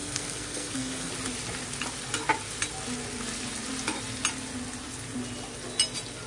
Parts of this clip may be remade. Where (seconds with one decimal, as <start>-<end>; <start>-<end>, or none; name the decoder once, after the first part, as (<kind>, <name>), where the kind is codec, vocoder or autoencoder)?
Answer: 0.0-1.1 (codec, SNAC)